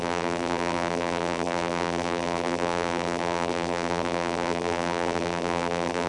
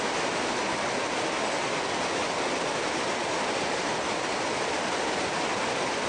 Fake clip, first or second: first